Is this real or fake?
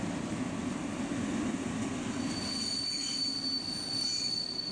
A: real